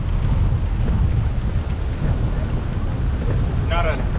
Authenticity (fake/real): real